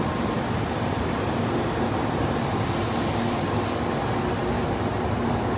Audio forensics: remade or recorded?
recorded